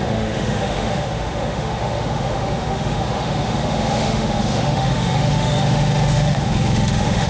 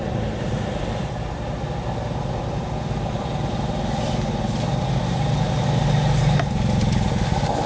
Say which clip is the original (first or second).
second